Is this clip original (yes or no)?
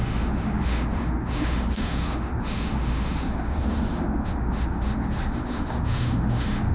no